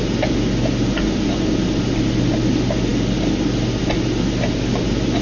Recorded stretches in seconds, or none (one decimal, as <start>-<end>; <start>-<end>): 0.0-5.2